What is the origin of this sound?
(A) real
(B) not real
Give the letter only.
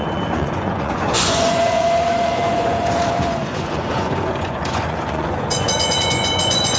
B